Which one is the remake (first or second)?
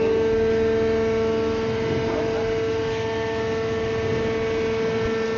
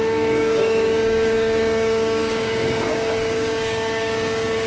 second